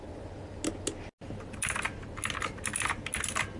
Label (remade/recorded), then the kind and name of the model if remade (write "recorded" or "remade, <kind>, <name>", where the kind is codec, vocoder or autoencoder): recorded